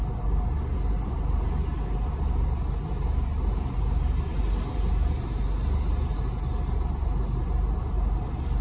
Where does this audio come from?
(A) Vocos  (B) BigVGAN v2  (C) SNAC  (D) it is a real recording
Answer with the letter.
D